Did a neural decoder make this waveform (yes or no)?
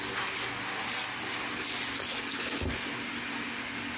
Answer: no